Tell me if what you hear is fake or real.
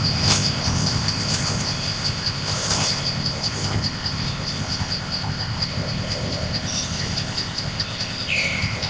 fake